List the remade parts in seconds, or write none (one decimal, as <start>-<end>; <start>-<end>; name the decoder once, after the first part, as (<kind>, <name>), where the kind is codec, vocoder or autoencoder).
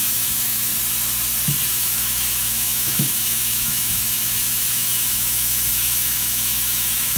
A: 0.0-0.7 (autoencoder, DAC-VAE); 1.7-7.2